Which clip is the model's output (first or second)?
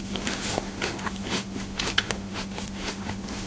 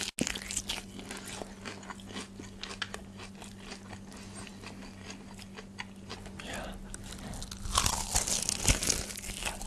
first